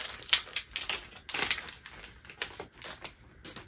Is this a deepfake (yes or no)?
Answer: no